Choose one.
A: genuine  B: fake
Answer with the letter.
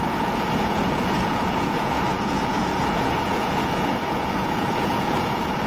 B